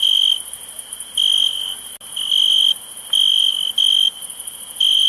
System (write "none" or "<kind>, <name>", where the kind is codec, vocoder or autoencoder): none